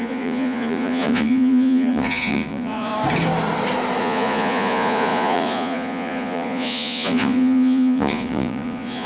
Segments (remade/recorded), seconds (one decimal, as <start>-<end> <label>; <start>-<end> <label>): 0.0-2.9 remade; 2.9-4.0 recorded; 4.0-9.1 remade